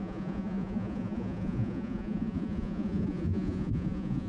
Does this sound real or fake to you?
fake